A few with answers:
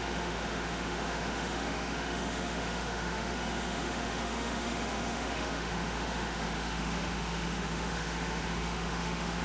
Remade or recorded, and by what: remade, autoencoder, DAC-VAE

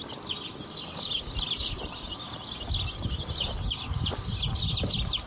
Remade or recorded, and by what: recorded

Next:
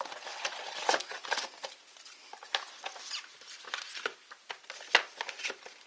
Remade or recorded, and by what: recorded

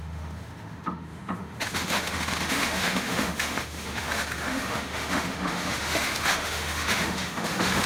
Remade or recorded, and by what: remade, autoencoder, DAC-VAE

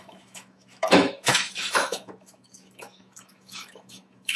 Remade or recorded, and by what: remade, autoencoder, DAC-VAE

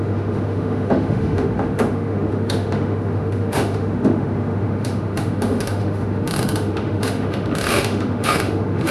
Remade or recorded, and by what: remade, autoencoder, DAC-VAE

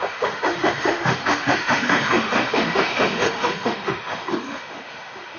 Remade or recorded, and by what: remade, autoencoder, DAC-VAE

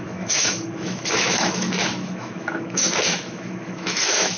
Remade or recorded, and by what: remade, autoencoder, DAC-VAE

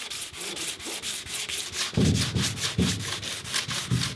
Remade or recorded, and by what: recorded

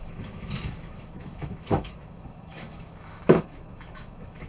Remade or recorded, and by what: remade, autoencoder, DAC-VAE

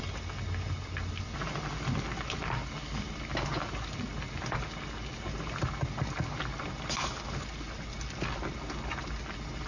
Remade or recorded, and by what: recorded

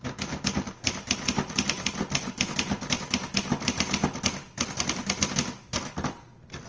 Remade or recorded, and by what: recorded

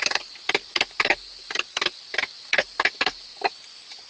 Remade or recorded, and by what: recorded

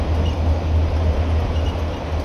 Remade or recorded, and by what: recorded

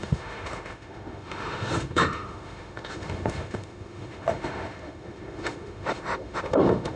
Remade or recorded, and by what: remade, autoencoder, DAC-VAE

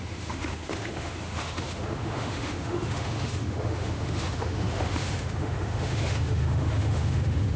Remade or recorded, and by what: remade, autoencoder, DAC-VAE